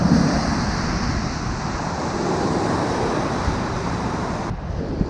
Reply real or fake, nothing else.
real